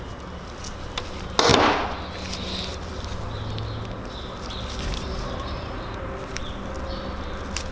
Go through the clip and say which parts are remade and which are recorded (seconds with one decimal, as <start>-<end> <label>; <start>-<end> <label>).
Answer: 0.0-7.7 recorded